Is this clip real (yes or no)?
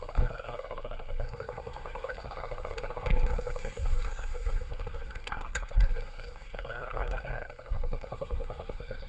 no